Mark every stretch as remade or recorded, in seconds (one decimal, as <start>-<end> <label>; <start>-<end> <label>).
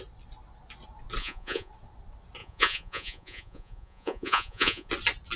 0.0-1.2 recorded; 1.2-1.7 remade; 1.7-2.4 recorded; 2.4-4.9 remade; 4.9-5.4 recorded